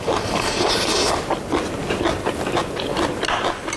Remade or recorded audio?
recorded